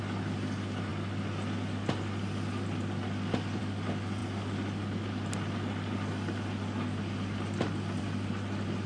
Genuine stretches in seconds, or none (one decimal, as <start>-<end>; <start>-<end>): 0.0-8.9